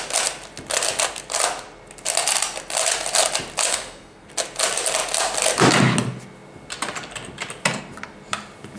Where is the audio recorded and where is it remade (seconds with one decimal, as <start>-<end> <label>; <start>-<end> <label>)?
0.0-3.7 recorded; 3.7-4.3 remade; 4.3-8.8 recorded